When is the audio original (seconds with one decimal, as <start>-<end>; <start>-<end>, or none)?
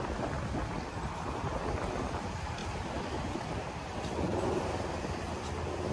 0.0-5.9